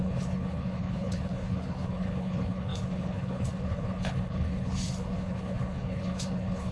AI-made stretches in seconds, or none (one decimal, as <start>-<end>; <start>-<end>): 0.0-6.7